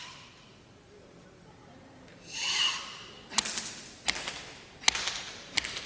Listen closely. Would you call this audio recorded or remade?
recorded